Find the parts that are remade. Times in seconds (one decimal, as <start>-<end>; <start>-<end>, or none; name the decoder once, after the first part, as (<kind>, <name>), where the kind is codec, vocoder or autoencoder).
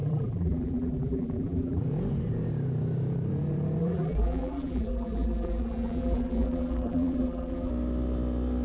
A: 0.0-1.8 (vocoder, BigVGAN v2); 3.8-7.7